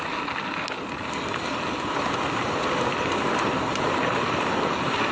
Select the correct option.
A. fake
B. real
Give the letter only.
B